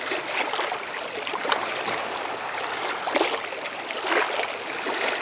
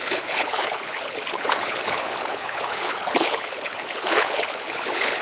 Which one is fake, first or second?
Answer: second